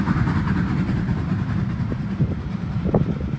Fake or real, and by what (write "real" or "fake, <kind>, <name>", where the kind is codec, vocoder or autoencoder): fake, vocoder, BigVGAN v2